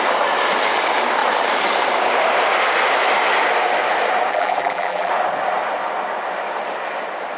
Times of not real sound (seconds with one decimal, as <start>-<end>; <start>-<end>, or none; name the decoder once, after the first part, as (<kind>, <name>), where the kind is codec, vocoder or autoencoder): 4.3-5.1 (vocoder, BigVGAN v2)